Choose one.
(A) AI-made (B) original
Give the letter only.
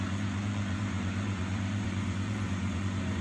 A